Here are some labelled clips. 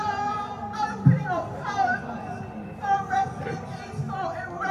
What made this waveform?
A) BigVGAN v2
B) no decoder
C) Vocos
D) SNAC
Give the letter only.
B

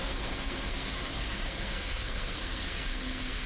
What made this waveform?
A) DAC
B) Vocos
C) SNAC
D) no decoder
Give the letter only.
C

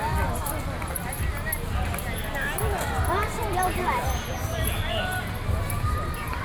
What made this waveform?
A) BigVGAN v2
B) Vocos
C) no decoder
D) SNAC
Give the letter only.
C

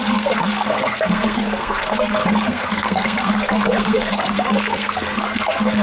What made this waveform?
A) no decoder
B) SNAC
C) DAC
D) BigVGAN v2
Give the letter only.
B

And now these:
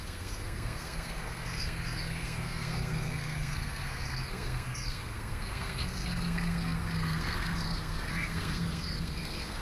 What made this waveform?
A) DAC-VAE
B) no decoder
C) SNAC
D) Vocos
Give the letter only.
C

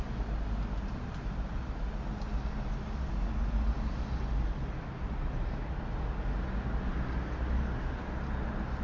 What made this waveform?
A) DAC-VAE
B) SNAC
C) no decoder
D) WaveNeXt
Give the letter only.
C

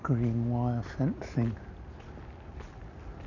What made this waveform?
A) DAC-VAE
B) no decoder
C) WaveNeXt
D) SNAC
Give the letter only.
B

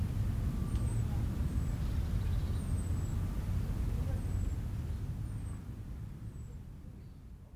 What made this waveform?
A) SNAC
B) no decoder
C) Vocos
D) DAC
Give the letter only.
B